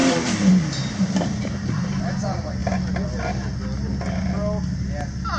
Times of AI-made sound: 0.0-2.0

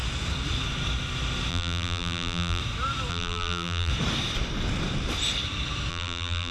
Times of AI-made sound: 1.5-2.6; 3.1-3.9; 5.9-6.5

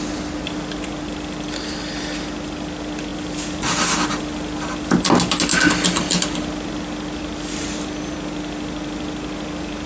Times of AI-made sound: none

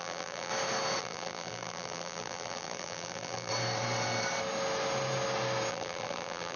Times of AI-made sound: 0.0-0.5; 1.0-3.5; 5.7-6.6

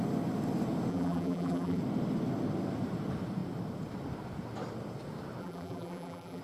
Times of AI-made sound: 0.9-1.8; 5.4-6.4